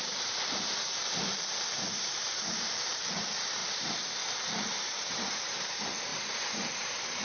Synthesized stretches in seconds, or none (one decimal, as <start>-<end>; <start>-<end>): 0.0-7.2